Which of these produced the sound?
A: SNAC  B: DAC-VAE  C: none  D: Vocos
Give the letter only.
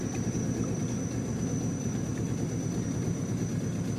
C